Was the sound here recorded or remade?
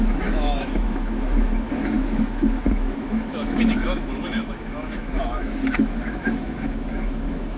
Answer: remade